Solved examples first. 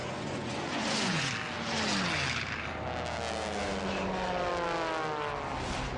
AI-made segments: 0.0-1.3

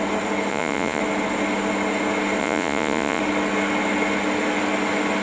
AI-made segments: 0.5-1.0; 2.4-3.2

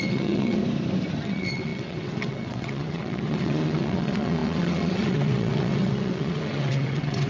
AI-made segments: 0.0-0.6; 1.2-7.3